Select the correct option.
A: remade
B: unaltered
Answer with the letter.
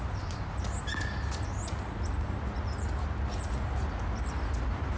B